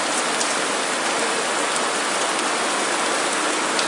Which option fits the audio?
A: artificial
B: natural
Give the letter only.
B